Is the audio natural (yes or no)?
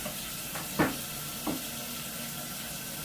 yes